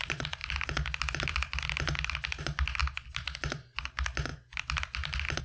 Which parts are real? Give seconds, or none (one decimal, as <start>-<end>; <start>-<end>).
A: 0.0-5.4